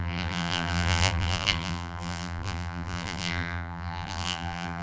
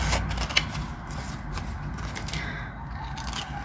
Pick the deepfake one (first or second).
first